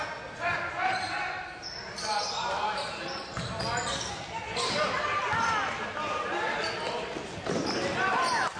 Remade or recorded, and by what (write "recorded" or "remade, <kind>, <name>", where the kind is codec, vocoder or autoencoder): recorded